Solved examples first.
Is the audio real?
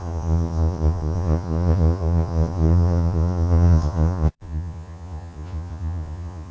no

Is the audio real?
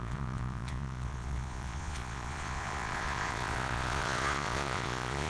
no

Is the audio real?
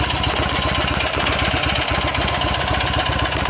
yes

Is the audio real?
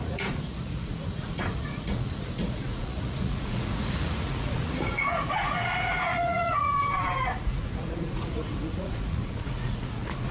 no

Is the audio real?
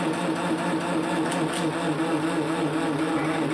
yes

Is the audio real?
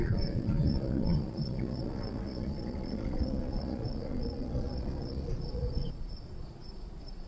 no